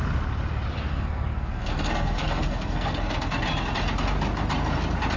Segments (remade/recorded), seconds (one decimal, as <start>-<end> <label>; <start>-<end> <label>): 0.0-0.9 recorded; 0.9-3.4 remade; 3.4-5.2 recorded